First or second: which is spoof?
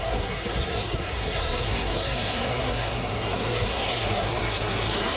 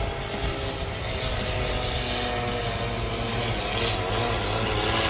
first